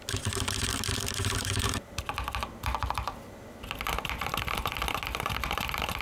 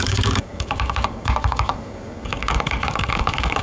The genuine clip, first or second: first